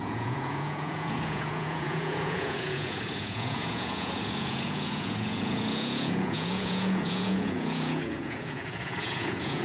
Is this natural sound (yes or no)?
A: no